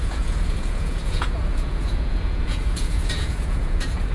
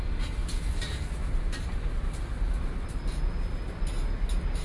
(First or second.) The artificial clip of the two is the first